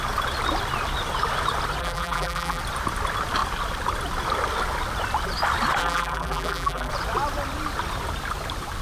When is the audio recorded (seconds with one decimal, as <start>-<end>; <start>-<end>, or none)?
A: 0.0-1.8; 2.6-5.8; 6.9-8.8

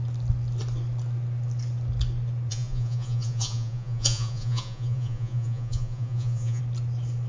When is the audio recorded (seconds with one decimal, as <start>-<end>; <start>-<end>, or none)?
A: 0.0-2.5; 6.6-7.3

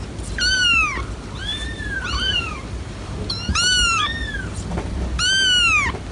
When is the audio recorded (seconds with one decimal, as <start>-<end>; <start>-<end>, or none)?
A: 0.0-1.5; 4.0-6.1

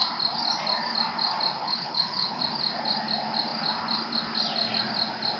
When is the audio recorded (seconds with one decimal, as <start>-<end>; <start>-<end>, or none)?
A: 0.0-1.6; 2.4-5.4

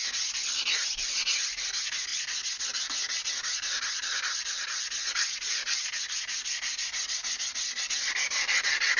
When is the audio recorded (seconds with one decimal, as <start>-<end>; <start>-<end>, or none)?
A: 0.0-9.0

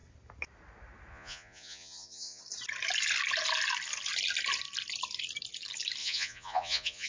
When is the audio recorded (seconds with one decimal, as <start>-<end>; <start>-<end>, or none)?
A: 0.0-1.1; 2.4-6.0

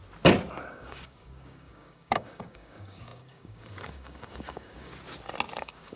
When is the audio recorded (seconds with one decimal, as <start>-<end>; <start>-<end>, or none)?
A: 0.0-0.7; 4.9-5.6